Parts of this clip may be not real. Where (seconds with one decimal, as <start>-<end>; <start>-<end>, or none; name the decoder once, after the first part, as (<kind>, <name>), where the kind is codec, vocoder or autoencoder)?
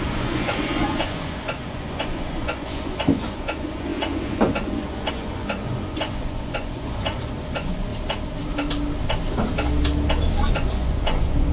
0.0-7.9 (vocoder, Vocos); 10.5-11.5